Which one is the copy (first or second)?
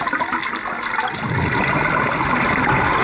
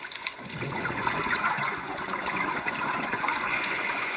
second